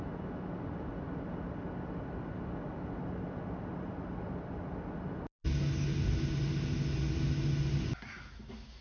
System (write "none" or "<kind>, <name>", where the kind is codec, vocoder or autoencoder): none